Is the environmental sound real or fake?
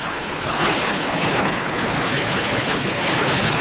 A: fake